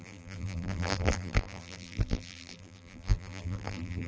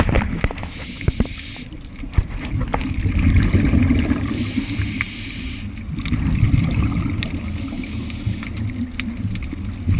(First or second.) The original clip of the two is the second